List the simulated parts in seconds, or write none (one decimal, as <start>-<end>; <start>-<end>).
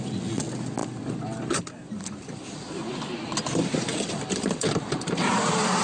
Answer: 0.8-2.5; 3.9-5.8